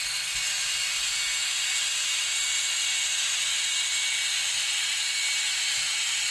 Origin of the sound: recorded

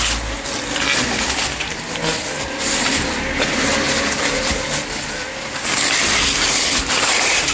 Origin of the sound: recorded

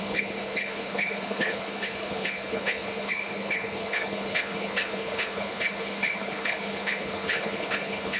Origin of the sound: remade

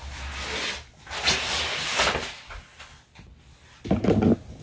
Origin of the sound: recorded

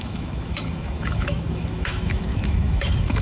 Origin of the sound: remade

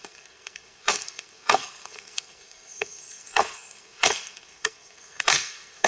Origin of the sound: remade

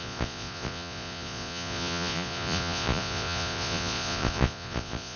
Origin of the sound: remade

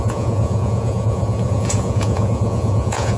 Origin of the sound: remade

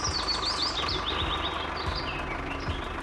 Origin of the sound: recorded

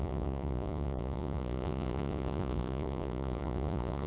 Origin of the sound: remade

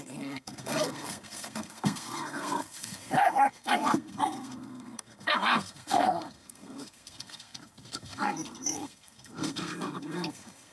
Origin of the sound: remade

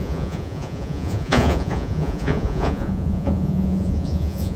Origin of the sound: remade